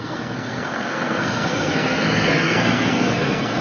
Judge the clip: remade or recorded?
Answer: remade